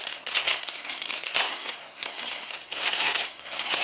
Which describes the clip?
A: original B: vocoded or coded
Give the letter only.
B